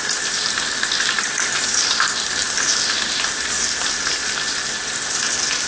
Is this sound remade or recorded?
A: recorded